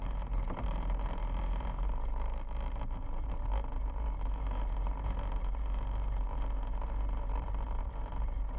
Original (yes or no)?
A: no